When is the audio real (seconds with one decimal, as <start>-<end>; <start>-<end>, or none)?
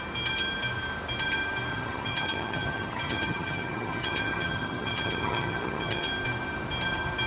0.0-1.7; 6.1-7.3